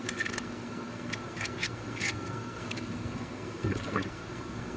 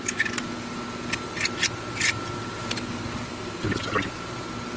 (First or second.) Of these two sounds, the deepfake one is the first